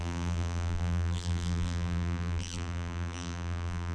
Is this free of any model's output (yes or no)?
no